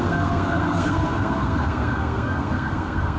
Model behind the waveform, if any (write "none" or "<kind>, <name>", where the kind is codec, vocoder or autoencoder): codec, SNAC